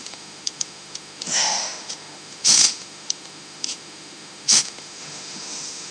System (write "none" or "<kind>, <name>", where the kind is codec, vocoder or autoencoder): autoencoder, DAC-VAE